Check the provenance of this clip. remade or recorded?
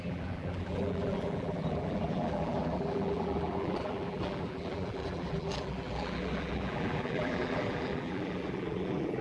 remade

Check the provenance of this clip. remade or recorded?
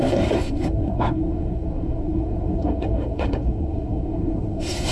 remade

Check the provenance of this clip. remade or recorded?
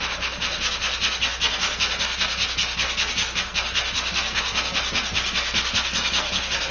remade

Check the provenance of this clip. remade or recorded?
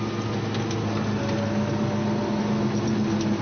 recorded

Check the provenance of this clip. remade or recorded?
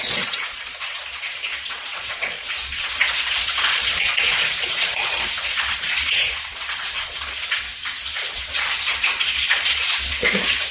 remade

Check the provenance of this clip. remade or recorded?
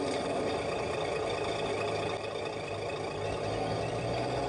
recorded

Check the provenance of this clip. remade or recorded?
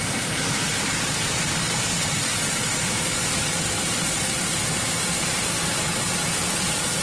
remade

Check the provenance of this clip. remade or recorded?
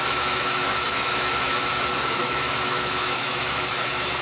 remade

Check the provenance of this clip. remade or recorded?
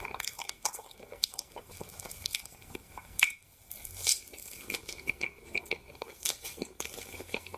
remade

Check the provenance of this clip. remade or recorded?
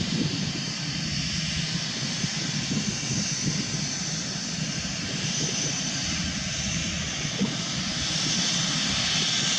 recorded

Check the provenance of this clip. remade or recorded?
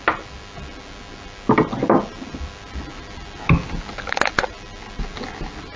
recorded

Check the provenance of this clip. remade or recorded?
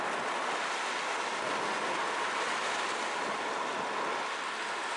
recorded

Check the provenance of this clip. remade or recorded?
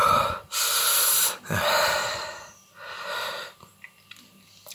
recorded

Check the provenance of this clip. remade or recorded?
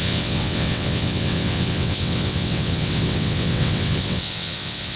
remade